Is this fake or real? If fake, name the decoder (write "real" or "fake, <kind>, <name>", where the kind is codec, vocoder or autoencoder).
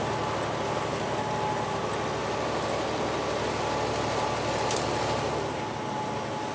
real